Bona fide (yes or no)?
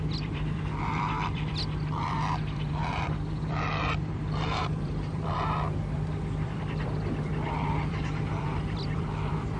no